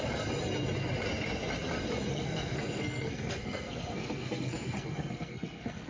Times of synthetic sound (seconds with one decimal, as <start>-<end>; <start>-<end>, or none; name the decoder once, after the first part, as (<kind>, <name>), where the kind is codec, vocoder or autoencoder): 2.1-5.9 (codec, SNAC)